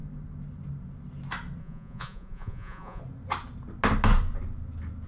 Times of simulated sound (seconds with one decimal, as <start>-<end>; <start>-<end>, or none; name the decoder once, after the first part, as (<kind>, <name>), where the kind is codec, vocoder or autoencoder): 1.6-3.0 (vocoder, Vocos)